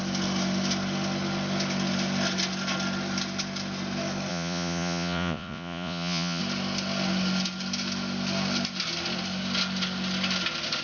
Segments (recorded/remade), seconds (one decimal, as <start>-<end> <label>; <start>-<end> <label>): 0.0-4.3 recorded; 4.3-6.4 remade; 6.4-10.8 recorded